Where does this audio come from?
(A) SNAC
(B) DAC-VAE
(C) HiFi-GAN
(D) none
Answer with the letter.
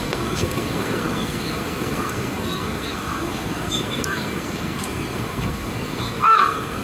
A